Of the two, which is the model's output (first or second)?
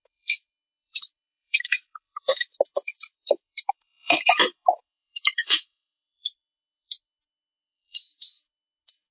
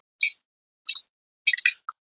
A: first